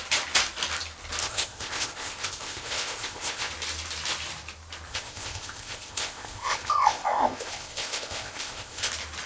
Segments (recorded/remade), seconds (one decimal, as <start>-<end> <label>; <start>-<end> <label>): 0.0-1.2 recorded; 1.2-3.5 remade; 3.5-4.9 recorded; 4.9-8.9 remade; 8.9-9.3 recorded